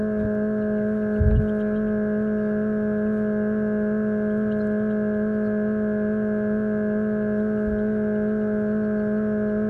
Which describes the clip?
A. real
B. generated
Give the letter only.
A